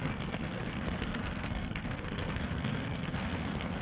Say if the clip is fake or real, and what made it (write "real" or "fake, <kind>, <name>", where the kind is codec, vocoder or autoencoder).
fake, codec, SNAC